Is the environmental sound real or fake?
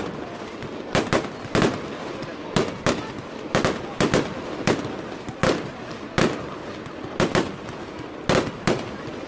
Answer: real